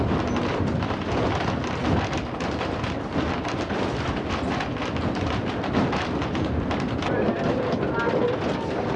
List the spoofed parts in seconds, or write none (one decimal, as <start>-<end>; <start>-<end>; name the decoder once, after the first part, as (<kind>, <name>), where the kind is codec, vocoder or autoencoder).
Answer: none